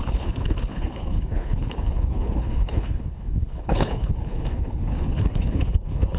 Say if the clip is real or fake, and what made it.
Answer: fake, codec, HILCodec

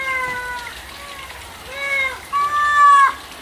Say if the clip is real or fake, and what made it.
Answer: real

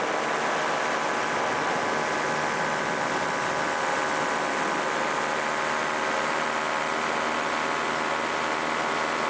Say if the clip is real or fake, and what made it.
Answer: real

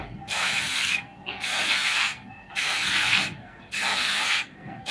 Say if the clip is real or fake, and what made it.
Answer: fake, codec, SNAC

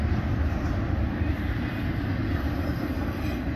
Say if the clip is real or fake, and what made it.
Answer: real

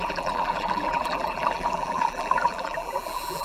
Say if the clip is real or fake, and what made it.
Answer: fake, vocoder, BigVGAN v2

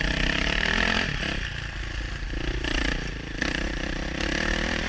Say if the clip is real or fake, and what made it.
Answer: real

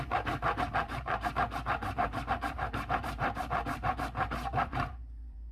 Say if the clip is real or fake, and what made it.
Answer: fake, vocoder, BigVGAN v2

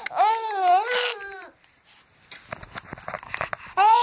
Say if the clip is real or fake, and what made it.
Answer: real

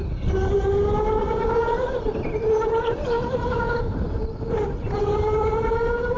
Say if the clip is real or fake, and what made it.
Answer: real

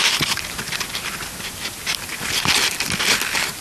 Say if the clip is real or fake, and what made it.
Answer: real